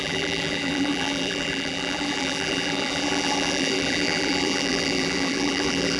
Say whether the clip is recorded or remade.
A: remade